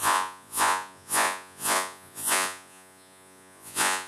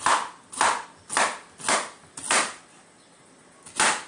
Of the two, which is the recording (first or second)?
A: second